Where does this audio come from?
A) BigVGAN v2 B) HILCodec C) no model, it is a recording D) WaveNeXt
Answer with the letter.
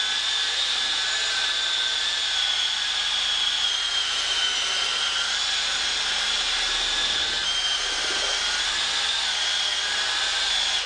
C